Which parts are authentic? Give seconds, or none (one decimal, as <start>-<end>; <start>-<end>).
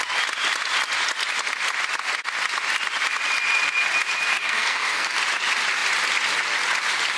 0.0-4.3; 5.2-7.2